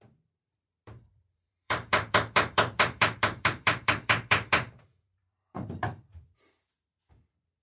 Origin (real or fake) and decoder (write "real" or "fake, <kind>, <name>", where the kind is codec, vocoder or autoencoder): fake, vocoder, BigVGAN v2